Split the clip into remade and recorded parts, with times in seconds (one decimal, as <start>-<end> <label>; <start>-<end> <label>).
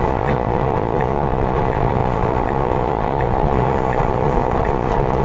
0.0-5.2 remade